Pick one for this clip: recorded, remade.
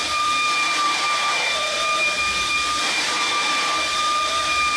remade